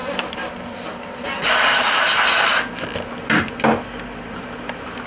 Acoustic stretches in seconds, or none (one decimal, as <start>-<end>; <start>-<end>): 0.0-5.1